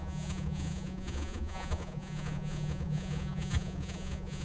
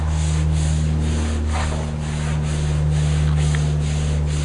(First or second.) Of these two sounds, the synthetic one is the first